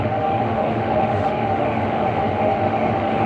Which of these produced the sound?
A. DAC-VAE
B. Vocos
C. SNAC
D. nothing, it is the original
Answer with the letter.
A